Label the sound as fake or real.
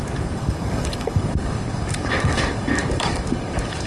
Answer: fake